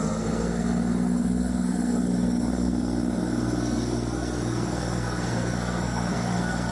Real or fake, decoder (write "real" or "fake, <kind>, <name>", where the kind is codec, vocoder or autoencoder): fake, codec, SNAC